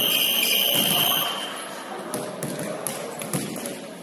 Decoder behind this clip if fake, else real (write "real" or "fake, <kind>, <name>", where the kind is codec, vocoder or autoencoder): real